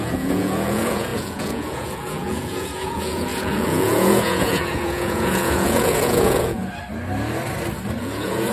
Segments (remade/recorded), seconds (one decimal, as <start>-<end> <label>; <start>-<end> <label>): 0.0-6.6 remade; 6.6-8.0 recorded; 8.0-8.5 remade